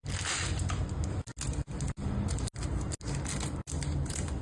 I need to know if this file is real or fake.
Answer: real